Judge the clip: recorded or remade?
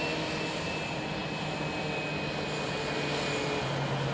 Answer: recorded